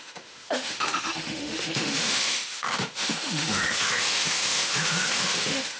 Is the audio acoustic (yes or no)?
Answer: no